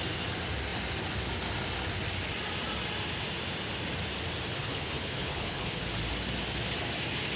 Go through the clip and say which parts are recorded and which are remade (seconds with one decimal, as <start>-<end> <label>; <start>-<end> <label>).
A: 0.0-4.6 recorded; 4.6-5.8 remade; 5.8-7.4 recorded